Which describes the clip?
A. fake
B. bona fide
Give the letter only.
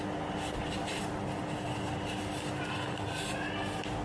B